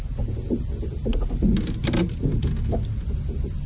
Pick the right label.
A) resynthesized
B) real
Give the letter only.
B